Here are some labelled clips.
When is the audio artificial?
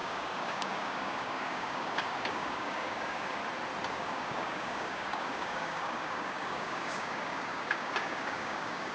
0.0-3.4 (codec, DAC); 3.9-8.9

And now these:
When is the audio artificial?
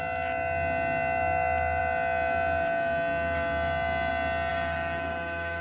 4.5-5.6 (codec, DAC)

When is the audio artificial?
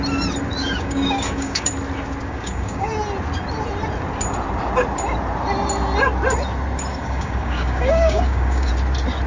0.6-1.7 (codec, DAC); 2.2-2.9; 6.9-8.7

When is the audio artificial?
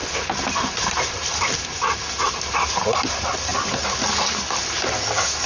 none